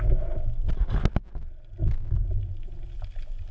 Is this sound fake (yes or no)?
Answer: no